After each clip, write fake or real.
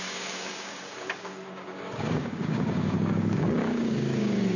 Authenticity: fake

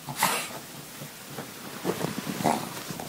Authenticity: real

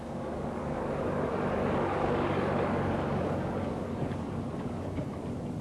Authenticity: fake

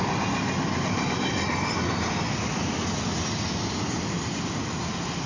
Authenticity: real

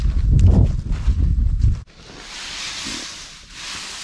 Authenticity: real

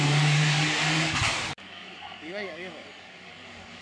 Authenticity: fake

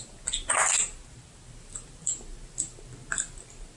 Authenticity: real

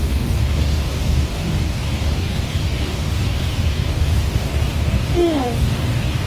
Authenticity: fake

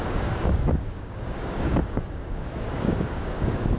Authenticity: fake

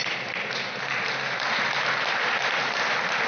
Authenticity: real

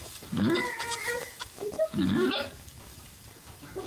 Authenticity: fake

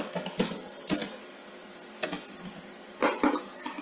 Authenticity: real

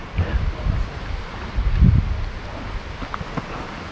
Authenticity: real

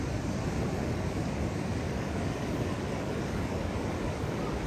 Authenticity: fake